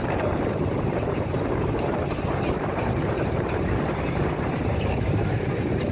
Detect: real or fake fake